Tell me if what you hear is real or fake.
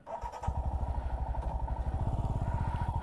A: real